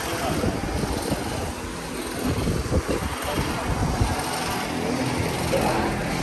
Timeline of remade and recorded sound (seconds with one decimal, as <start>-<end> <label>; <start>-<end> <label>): 0.0-6.2 recorded